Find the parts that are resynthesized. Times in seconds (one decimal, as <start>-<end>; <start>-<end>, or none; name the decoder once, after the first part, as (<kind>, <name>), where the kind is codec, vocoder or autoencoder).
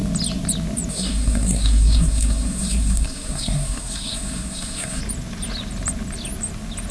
0.9-5.0 (codec, SNAC)